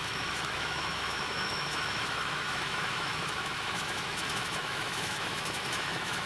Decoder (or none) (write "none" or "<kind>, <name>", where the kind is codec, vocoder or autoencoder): autoencoder, DAC-VAE